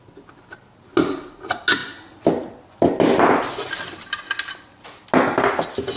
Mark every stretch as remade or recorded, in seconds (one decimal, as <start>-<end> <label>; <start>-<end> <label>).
0.0-6.0 recorded